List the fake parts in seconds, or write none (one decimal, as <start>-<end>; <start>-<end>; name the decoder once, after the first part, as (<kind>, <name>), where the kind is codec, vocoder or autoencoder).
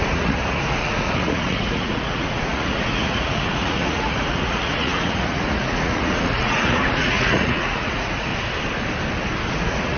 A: 0.0-8.3 (vocoder, Vocos); 9.5-10.0